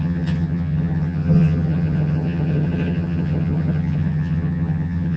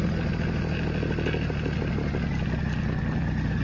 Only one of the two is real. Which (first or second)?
second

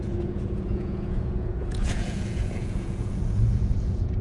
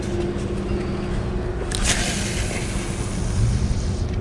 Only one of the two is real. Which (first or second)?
second